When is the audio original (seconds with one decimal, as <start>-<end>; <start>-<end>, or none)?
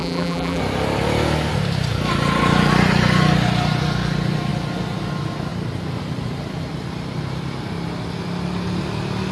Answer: 0.6-9.3